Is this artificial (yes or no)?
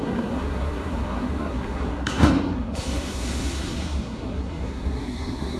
yes